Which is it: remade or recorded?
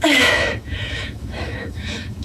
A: remade